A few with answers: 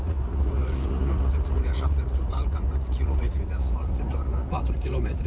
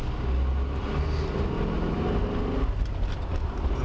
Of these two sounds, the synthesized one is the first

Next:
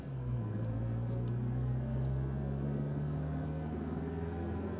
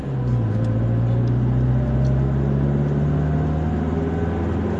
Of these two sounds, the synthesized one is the first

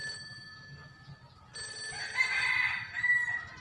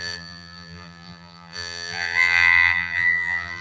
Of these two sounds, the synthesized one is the second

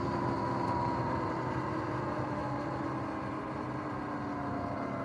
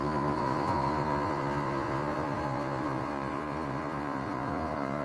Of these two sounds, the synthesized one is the second